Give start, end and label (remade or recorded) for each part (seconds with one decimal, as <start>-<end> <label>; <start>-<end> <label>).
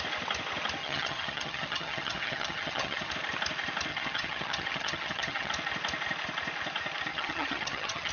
0.0-0.8 recorded; 0.8-3.1 remade; 3.1-3.9 recorded; 3.9-5.5 remade; 5.5-7.1 recorded; 7.1-8.1 remade